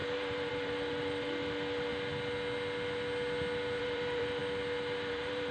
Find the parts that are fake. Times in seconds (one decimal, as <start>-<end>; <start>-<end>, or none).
0.0-1.9; 3.8-4.4; 5.1-5.5